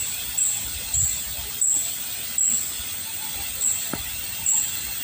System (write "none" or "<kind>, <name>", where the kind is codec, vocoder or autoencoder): none